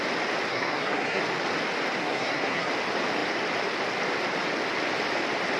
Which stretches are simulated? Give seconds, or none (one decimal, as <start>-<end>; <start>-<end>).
0.5-1.2; 2.0-2.7